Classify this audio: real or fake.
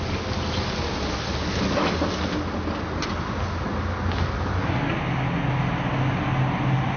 real